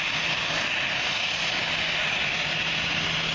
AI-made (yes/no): no